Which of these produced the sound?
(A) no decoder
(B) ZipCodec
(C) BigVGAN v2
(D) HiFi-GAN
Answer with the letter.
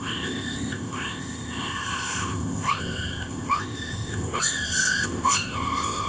B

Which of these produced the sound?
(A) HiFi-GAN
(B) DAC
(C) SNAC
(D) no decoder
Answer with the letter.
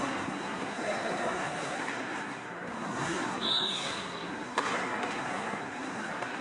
C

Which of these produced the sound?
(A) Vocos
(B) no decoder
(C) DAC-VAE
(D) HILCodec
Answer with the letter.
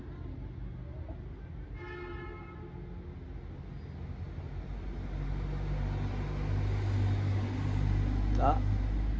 B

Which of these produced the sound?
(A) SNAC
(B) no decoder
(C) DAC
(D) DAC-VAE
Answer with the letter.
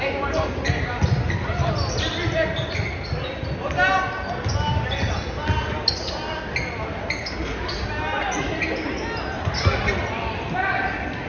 B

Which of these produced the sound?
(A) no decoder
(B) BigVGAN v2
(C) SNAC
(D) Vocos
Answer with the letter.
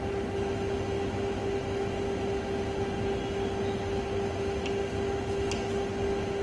A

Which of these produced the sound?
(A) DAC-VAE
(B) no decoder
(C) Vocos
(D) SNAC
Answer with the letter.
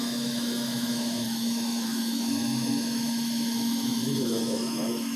A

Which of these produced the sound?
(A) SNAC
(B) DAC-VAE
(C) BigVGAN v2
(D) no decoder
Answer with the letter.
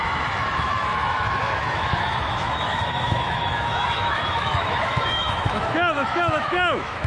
B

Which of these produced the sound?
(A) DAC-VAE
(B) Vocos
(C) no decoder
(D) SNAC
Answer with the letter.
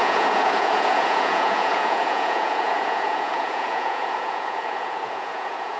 B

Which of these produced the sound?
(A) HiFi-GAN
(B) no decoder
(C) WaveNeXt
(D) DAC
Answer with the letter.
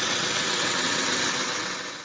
C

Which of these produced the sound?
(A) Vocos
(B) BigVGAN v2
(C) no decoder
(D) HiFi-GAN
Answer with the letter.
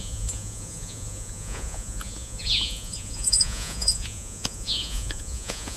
A